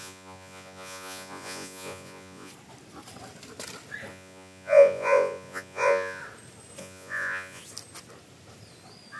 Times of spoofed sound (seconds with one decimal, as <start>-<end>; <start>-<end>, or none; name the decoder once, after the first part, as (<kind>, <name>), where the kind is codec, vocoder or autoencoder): 0.0-2.5 (vocoder, Vocos); 4.1-6.2; 6.8-7.6